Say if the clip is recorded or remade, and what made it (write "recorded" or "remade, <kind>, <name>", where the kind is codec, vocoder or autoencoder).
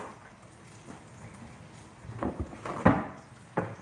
recorded